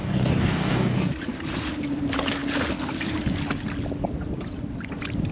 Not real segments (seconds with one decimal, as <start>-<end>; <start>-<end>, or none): 0.0-1.1